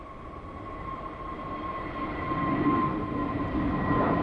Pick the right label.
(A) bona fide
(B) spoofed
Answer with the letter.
B